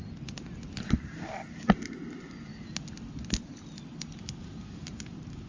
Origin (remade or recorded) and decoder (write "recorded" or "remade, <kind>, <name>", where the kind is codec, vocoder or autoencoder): recorded